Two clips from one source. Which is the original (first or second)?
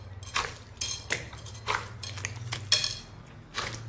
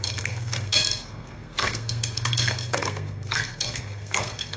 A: first